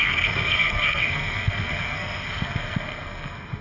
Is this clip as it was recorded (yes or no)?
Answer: no